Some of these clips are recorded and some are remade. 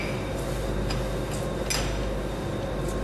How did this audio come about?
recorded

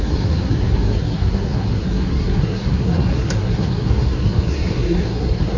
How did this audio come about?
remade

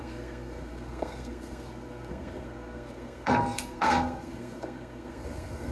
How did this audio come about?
remade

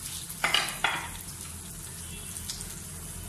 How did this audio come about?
recorded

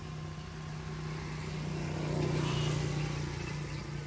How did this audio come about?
recorded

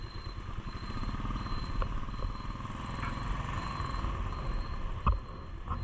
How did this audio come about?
recorded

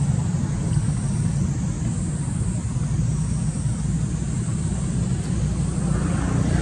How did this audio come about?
recorded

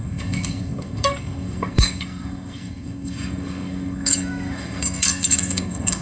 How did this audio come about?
remade